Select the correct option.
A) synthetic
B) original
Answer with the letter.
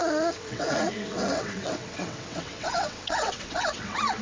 A